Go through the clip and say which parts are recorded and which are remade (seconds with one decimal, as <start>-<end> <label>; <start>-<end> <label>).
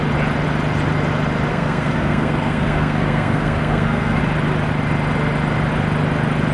0.0-1.5 recorded; 1.5-4.2 remade; 4.2-6.5 recorded